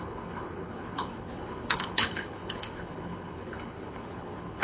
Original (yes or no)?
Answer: no